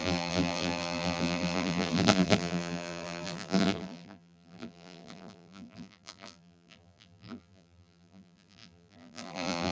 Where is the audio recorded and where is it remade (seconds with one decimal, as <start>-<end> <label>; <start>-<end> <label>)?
0.0-9.7 remade